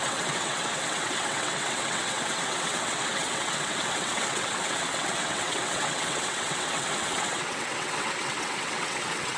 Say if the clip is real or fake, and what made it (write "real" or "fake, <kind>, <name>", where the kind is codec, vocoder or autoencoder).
fake, vocoder, WaveNeXt